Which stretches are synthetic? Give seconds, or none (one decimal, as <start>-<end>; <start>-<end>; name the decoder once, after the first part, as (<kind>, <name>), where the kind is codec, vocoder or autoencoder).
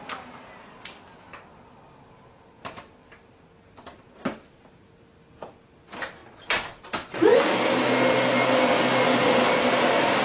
none